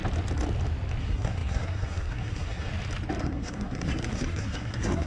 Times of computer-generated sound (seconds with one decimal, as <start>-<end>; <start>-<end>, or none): 1.0-2.7; 3.2-5.1